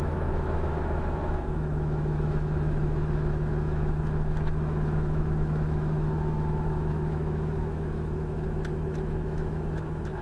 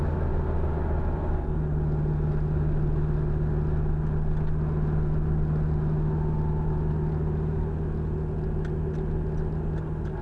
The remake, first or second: first